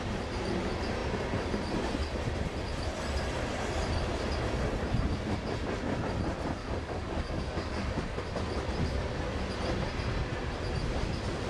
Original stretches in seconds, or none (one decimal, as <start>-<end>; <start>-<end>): 0.0-6.6; 8.2-11.5